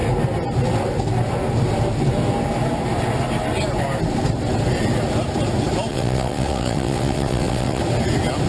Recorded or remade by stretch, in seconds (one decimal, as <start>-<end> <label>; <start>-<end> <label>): 0.0-5.9 recorded; 5.9-7.8 remade; 7.8-8.5 recorded